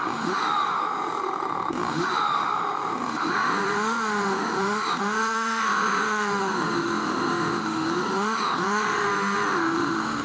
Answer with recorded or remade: remade